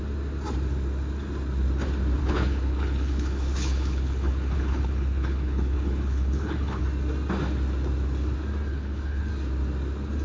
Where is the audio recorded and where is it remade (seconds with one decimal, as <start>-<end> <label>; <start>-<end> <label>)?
0.0-2.2 recorded; 2.2-6.8 remade; 6.8-8.7 recorded; 8.7-9.3 remade; 9.3-10.2 recorded

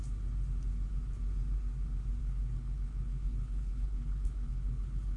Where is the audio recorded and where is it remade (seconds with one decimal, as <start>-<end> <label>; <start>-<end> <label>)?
0.0-2.2 recorded; 2.2-5.2 remade

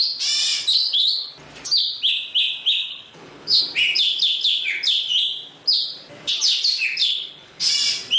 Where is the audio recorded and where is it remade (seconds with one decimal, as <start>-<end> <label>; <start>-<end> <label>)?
0.0-0.7 recorded; 0.7-1.3 remade; 1.3-2.9 recorded; 2.9-3.6 remade; 3.6-7.0 recorded; 7.0-7.7 remade; 7.7-8.2 recorded

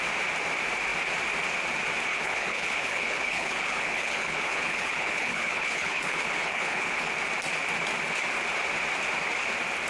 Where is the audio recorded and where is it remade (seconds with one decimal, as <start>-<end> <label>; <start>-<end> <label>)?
0.0-2.1 recorded; 2.1-7.1 remade; 7.1-9.9 recorded

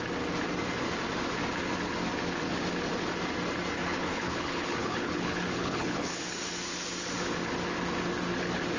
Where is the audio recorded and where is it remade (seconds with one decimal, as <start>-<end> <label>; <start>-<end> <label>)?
0.0-3.8 recorded; 3.8-6.2 remade; 6.2-8.8 recorded

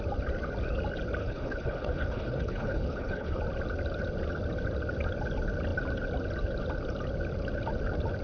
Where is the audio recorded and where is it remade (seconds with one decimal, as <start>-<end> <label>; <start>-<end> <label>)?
0.0-1.2 recorded; 1.2-3.4 remade; 3.4-8.2 recorded